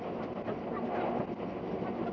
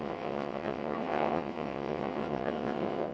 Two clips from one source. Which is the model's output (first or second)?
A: second